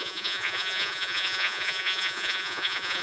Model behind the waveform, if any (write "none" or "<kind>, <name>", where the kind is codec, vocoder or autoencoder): vocoder, Vocos